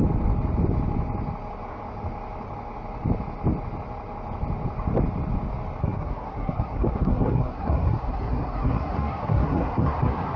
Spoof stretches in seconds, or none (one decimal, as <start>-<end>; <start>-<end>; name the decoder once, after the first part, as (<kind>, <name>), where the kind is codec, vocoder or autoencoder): 5.8-10.4 (codec, SNAC)

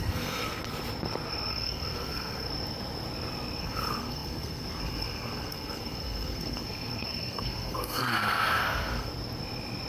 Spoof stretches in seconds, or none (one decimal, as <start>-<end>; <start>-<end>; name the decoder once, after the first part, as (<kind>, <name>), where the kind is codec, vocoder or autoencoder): 0.0-0.6 (codec, SNAC); 1.5-2.5; 3.6-9.1

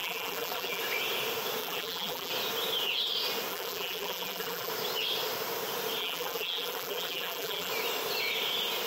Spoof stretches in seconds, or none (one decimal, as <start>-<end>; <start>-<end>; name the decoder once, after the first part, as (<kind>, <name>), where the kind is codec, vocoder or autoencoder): 0.0-0.8 (vocoder, BigVGAN v2); 1.6-2.3; 3.5-4.7; 6.0-7.7

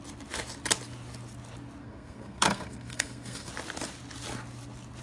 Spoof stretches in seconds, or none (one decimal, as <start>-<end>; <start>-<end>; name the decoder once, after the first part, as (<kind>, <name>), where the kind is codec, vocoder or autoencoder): 1.8-3.5 (codec, SNAC)